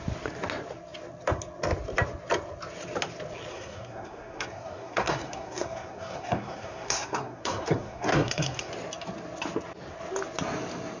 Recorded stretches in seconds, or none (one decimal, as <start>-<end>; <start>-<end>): 0.0-3.5; 8.7-11.0